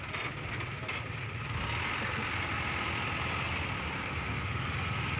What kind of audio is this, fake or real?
real